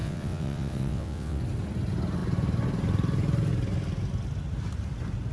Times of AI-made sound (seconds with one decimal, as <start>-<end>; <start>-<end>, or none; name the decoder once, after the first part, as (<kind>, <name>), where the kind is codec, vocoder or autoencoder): 0.0-1.4 (vocoder, WaveNeXt)